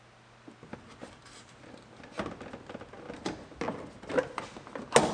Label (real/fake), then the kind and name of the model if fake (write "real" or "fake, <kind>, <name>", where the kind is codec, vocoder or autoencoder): real